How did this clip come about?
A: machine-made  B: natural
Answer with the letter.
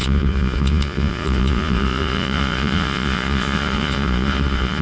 A